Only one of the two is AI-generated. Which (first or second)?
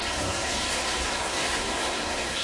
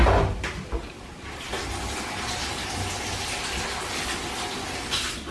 first